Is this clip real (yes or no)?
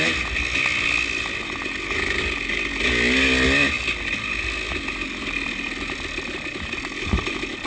yes